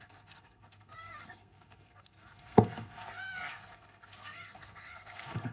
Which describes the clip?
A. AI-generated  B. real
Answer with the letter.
A